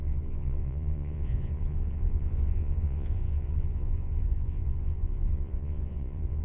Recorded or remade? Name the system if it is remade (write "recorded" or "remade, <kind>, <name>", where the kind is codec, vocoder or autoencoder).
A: remade, vocoder, Vocos